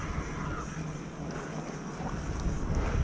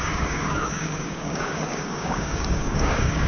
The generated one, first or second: second